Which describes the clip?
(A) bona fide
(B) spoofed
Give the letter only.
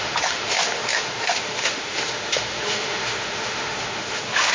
B